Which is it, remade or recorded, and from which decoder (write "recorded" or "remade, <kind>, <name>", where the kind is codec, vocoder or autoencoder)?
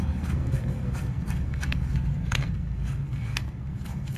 remade, codec, SNAC